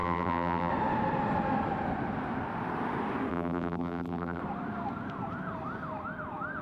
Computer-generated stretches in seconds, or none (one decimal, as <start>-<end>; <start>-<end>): 0.0-0.7; 3.3-4.4